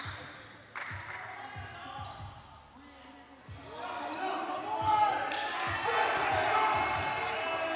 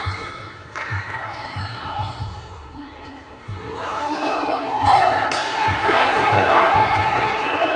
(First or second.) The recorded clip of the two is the first